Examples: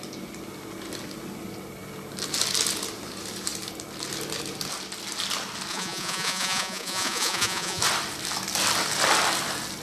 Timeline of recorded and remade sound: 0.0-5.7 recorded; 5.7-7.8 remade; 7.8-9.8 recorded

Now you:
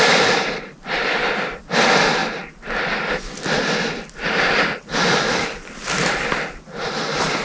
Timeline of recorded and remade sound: 0.0-2.2 remade; 2.2-2.8 recorded; 2.8-7.4 remade

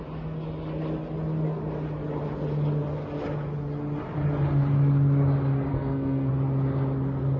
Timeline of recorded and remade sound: 0.0-5.7 recorded; 5.7-6.3 remade; 6.3-7.4 recorded

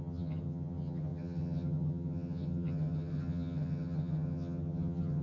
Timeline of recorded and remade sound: 0.0-5.2 remade

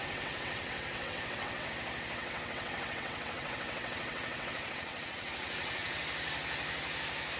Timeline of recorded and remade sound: 0.0-1.7 remade; 1.7-2.2 recorded; 2.2-6.0 remade; 6.0-7.4 recorded

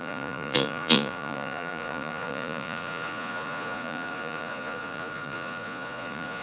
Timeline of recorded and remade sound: 0.0-6.4 remade